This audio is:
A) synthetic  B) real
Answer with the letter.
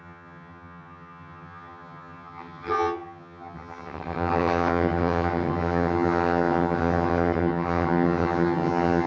A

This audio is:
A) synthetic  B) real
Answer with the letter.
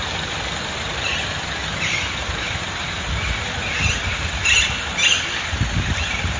B